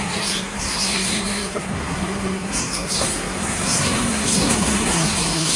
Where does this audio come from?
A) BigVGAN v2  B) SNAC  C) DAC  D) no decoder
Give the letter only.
B